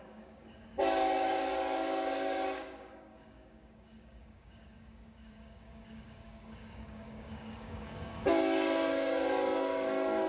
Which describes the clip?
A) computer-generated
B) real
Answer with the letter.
A